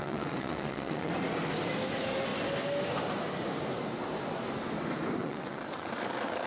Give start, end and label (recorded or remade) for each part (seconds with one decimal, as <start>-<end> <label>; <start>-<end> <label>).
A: 0.0-1.1 remade; 1.1-5.2 recorded; 5.2-5.9 remade; 5.9-6.5 recorded